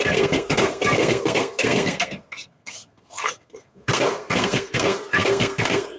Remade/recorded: remade